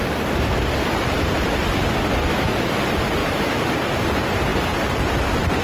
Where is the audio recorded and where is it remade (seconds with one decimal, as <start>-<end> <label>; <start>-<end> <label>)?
0.0-2.3 recorded; 2.3-2.8 remade; 2.8-3.2 recorded; 3.2-3.7 remade; 3.7-5.6 recorded